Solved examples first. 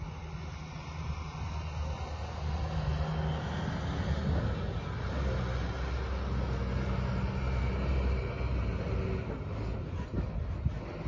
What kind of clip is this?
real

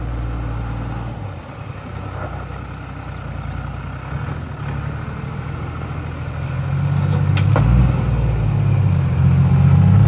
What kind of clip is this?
real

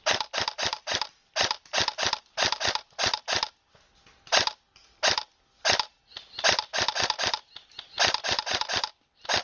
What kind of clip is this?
real